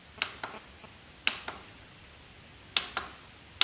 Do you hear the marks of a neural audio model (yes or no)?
no